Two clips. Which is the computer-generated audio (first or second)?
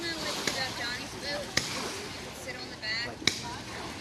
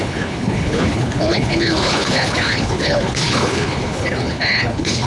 second